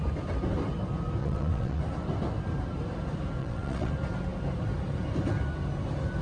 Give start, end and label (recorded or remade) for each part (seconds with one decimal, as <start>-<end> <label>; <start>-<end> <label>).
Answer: 0.0-1.2 recorded; 1.2-1.8 remade; 1.8-3.4 recorded; 3.4-3.9 remade; 3.9-6.2 recorded